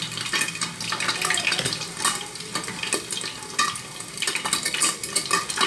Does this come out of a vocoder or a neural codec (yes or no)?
no